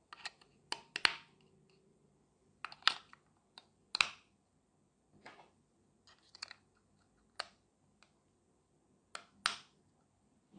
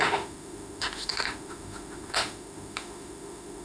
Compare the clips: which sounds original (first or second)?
first